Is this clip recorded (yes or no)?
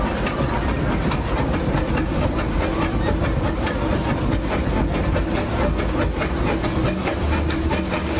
yes